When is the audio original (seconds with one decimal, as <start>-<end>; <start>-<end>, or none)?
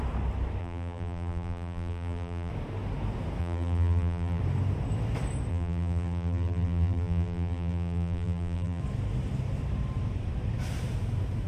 0.0-0.6; 2.5-3.4; 4.4-5.5; 8.8-11.5